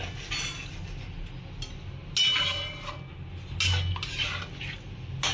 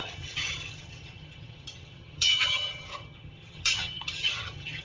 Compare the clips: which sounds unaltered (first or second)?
first